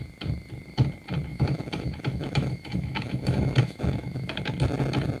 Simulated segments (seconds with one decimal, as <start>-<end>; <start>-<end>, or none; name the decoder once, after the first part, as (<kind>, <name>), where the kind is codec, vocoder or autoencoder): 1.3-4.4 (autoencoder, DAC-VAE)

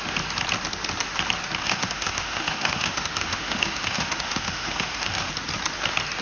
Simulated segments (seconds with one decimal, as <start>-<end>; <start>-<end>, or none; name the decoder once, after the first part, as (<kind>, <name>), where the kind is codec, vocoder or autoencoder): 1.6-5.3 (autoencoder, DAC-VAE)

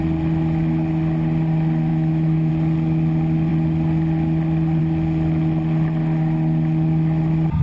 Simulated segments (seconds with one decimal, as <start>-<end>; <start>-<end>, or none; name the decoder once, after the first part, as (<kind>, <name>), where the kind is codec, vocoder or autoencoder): 1.9-2.5 (autoencoder, DAC-VAE)

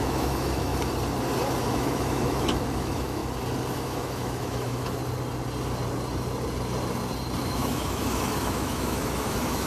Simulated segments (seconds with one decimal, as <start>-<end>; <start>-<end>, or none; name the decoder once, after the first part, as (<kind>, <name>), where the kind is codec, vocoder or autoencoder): 0.0-0.7 (autoencoder, DAC-VAE); 1.7-3.2; 3.7-5.0; 7.4-9.7

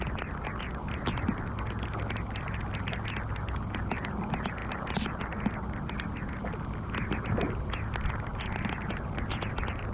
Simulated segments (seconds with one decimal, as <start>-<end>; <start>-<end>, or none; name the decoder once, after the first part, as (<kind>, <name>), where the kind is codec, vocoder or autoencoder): none

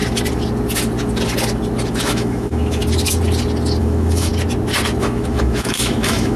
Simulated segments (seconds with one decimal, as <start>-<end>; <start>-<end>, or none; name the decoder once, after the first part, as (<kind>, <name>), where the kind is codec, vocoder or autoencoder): 1.9-2.8 (autoencoder, DAC-VAE); 3.8-4.3; 5.0-6.4